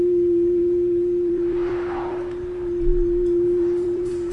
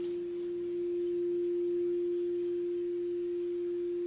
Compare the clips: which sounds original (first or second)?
second